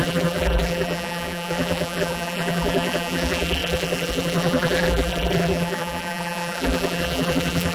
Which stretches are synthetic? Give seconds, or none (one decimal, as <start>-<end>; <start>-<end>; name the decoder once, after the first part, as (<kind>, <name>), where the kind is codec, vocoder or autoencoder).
0.0-7.7 (vocoder, BigVGAN v2)